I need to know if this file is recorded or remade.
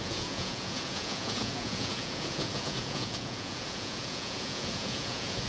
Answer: remade